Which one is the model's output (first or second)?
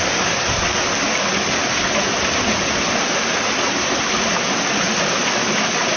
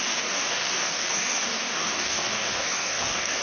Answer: second